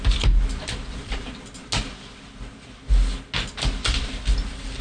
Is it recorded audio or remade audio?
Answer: recorded